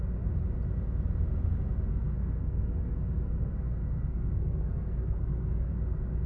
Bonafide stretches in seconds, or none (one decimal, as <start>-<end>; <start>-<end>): 0.0-1.9; 5.7-6.3